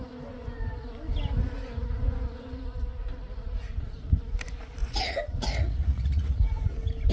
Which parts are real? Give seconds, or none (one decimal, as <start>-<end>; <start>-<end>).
0.0-4.8; 6.6-7.1